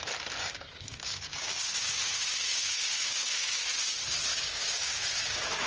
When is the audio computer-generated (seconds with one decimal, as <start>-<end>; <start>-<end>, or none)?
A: 0.4-3.8; 4.3-5.7